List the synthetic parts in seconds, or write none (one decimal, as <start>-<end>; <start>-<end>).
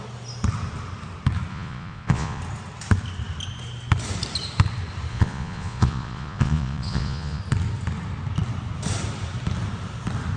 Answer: 1.5-2.4; 5.1-7.4